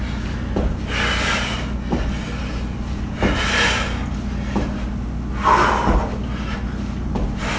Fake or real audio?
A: real